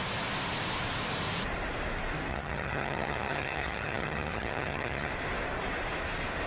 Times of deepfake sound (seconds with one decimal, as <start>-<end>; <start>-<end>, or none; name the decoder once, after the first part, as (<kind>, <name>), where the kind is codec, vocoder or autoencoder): 2.3-5.1 (vocoder, HiFi-GAN)